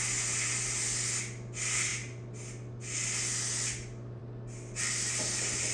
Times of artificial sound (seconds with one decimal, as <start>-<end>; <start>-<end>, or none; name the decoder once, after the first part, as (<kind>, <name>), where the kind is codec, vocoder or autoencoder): none